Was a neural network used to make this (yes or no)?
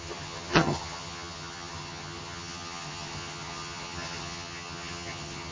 yes